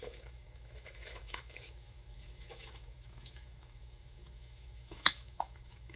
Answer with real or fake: fake